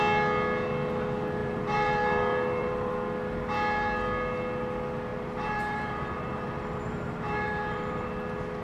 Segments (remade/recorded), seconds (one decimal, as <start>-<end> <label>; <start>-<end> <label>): 0.0-1.4 recorded; 1.4-2.9 remade; 2.9-5.1 recorded; 5.1-8.1 remade; 8.1-8.6 recorded